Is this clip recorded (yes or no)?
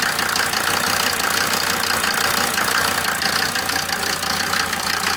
yes